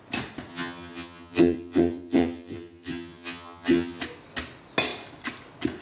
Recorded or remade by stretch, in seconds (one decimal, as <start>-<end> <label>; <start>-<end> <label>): 0.0-0.5 recorded; 0.5-4.0 remade; 4.0-5.8 recorded